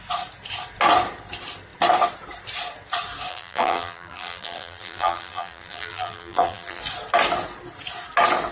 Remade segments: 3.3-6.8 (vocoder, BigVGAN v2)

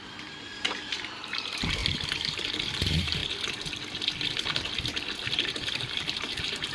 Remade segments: 0.0-3.2 (vocoder, BigVGAN v2); 4.8-6.7

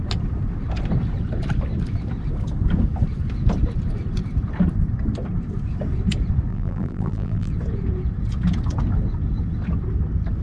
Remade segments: 6.5-7.5 (vocoder, BigVGAN v2)

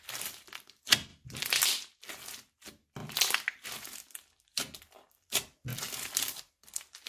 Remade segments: 1.1-2.0 (vocoder, BigVGAN v2); 5.7-6.5

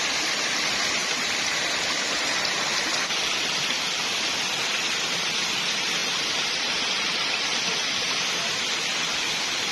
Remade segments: 0.0-9.7 (vocoder, BigVGAN v2)

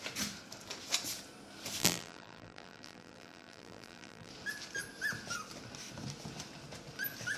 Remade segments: 1.8-4.3 (vocoder, BigVGAN v2)